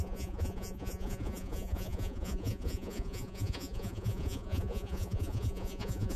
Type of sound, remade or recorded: remade